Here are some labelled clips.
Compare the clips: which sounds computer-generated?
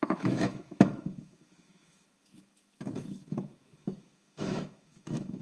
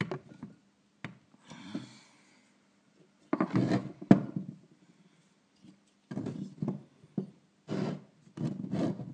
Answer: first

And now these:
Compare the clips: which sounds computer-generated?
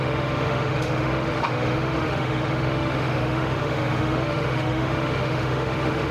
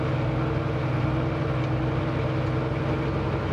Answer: first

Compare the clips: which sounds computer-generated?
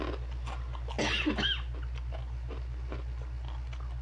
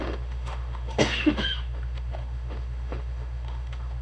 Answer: second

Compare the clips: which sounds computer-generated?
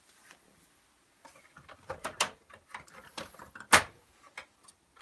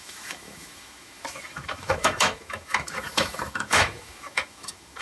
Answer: second